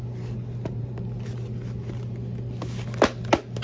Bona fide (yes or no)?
yes